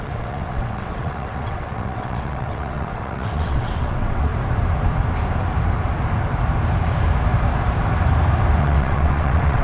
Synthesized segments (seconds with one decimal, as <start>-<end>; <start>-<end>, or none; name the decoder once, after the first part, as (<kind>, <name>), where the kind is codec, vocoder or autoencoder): 0.0-4.3 (vocoder, WaveNeXt); 8.6-9.6